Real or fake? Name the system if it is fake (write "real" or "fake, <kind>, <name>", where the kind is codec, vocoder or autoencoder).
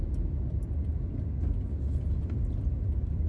real